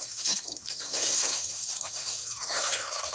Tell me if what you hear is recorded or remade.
remade